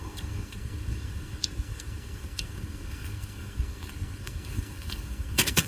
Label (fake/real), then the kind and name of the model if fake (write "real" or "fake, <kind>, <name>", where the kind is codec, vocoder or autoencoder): fake, codec, SNAC